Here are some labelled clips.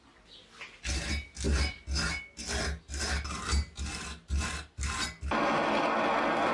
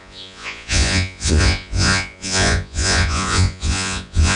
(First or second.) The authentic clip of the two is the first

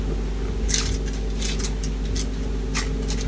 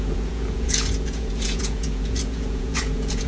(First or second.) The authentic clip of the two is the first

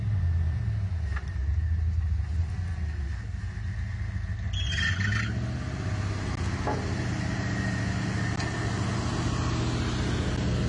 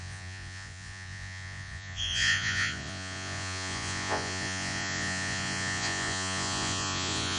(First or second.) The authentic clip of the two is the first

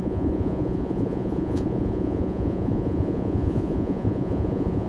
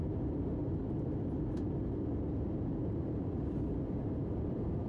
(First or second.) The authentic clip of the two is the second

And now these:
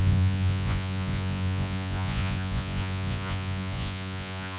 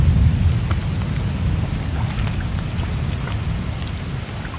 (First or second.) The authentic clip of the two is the second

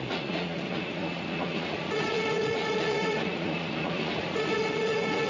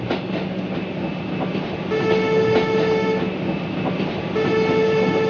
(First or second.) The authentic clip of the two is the second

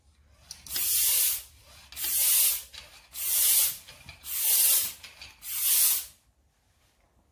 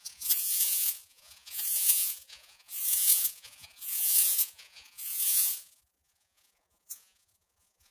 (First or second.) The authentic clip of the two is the first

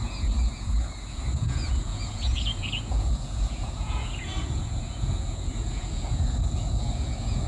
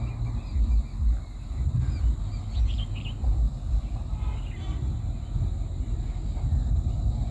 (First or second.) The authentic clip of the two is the second